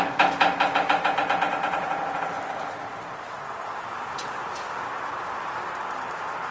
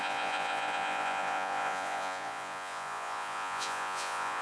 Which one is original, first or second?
first